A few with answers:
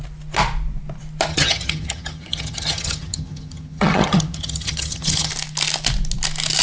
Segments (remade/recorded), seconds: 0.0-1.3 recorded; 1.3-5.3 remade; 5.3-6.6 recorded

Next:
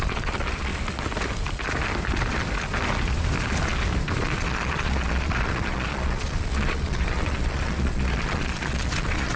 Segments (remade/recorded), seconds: 0.0-0.7 remade; 0.7-4.4 recorded; 4.4-9.4 remade

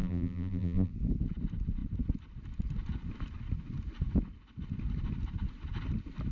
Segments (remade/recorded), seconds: 0.0-0.9 remade; 0.9-6.3 recorded

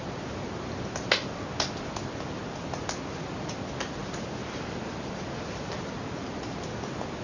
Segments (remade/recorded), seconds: 0.0-7.2 recorded